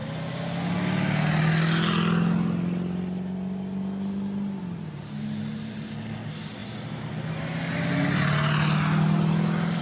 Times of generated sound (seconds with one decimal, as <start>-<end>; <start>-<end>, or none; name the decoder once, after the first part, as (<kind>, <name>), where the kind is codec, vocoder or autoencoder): none